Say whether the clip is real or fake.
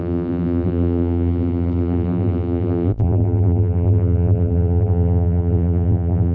fake